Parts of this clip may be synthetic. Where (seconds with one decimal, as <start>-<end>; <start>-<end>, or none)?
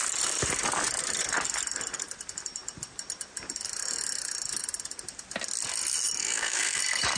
6.2-6.8